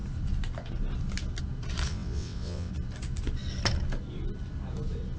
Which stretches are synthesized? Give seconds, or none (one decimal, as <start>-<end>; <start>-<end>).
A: 1.9-2.7